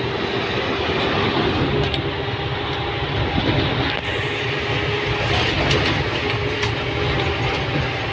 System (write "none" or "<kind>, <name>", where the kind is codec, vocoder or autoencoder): none